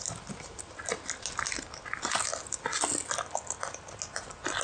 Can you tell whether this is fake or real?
real